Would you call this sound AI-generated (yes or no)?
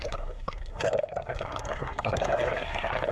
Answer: yes